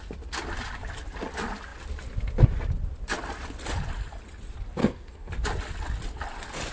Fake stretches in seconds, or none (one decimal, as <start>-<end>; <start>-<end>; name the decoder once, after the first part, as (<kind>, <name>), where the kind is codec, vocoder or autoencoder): 4.8-5.3 (codec, SNAC)